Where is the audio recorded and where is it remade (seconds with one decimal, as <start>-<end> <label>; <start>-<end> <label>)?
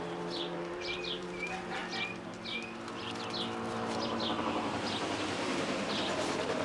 0.0-1.8 remade; 1.8-4.4 recorded; 4.4-6.6 remade